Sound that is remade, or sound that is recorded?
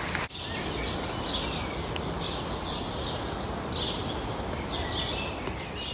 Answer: recorded